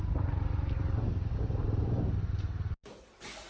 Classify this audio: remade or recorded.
recorded